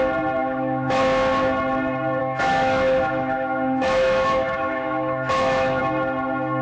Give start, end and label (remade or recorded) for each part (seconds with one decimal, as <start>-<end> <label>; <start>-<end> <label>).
0.0-0.4 recorded; 0.4-1.0 remade; 1.0-2.2 recorded; 2.2-5.8 remade; 5.8-6.6 recorded